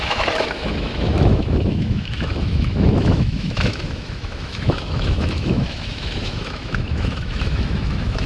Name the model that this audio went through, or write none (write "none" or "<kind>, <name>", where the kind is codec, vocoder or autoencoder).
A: autoencoder, DAC-VAE